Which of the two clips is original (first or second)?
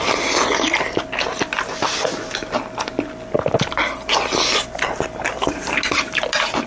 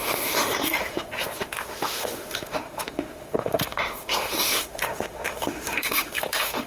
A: first